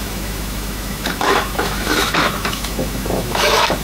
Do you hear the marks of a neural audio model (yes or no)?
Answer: yes